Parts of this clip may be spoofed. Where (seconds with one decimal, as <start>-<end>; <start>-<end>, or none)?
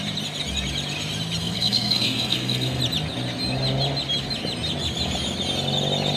1.4-2.8